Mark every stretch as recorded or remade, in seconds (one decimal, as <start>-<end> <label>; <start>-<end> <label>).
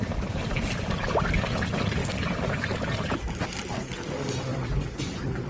0.0-2.0 recorded; 2.0-3.2 remade; 3.2-4.5 recorded; 4.5-5.5 remade